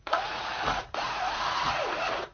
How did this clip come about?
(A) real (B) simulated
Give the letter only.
B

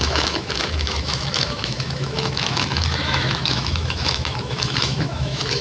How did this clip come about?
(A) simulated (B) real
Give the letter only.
A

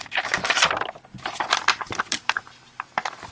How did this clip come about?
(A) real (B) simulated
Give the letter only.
A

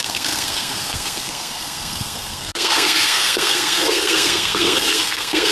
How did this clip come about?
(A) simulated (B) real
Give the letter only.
A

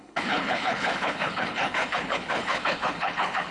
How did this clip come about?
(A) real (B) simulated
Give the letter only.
B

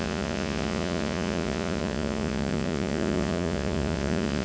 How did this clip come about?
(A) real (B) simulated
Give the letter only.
B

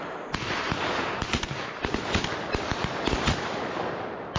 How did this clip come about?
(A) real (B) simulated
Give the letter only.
A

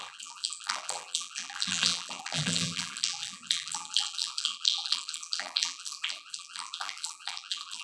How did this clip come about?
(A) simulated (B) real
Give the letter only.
A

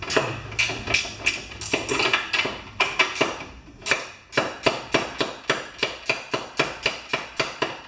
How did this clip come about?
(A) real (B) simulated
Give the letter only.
A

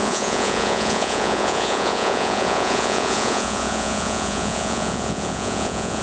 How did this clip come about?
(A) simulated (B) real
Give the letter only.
A